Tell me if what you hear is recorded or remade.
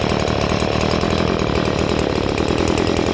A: recorded